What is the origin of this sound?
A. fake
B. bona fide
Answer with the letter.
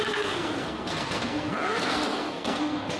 A